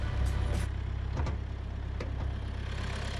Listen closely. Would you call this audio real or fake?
real